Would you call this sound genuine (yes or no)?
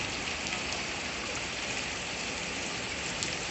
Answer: yes